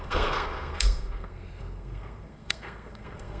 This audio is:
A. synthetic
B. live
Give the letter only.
A